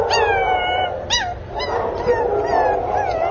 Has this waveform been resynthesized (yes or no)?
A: no